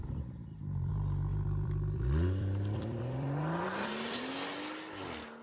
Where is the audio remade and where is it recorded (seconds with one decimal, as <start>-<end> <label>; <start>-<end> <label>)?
0.0-0.9 remade; 0.9-1.3 recorded; 1.3-4.2 remade; 4.2-5.4 recorded